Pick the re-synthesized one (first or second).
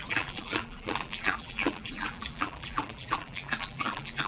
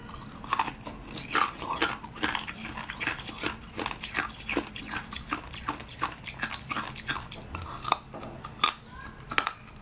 first